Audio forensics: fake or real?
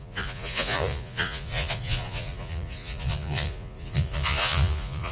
fake